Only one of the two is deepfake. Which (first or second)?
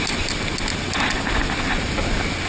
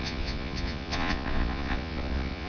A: second